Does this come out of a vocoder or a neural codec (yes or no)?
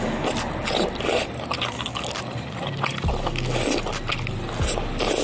no